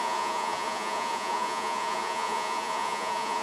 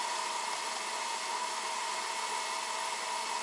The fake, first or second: first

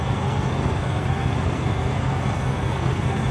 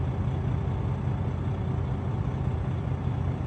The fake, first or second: first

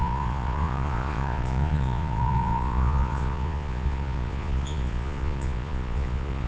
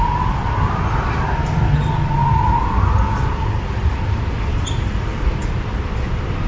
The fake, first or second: first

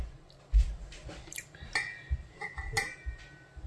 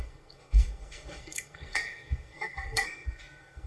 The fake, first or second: second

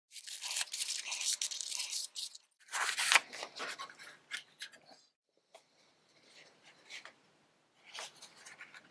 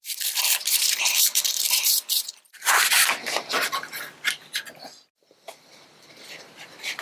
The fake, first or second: second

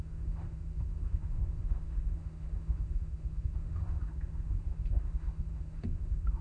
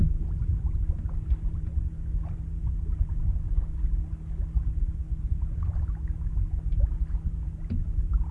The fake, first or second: first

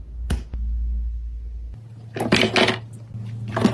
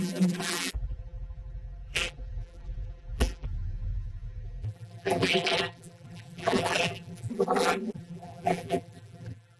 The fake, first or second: second